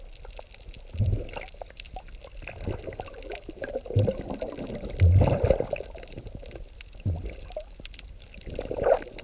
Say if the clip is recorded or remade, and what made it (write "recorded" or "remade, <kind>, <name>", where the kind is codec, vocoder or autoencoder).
recorded